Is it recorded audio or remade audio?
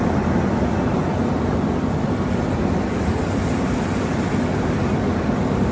remade